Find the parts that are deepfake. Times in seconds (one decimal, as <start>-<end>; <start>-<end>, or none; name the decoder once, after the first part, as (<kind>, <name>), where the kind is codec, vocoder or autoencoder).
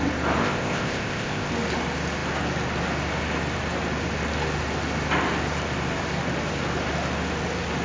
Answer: 0.4-1.5 (codec, ZipCodec)